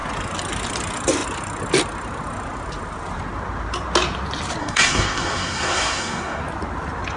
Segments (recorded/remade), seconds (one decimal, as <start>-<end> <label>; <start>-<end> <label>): 0.0-4.6 recorded; 4.6-6.4 remade; 6.4-7.2 recorded